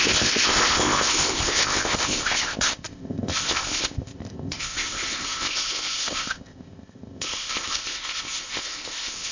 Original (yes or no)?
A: no